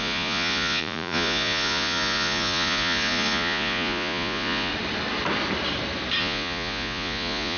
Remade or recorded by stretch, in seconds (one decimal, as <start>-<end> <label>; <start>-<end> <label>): 0.0-4.7 remade; 4.7-6.2 recorded; 6.2-7.6 remade